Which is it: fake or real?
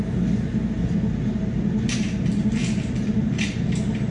real